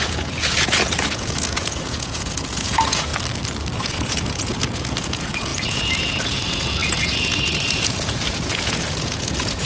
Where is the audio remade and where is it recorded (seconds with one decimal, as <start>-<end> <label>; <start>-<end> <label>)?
0.0-3.1 remade; 3.1-3.8 recorded; 3.8-9.7 remade